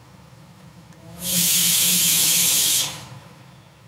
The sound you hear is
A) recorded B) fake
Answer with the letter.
B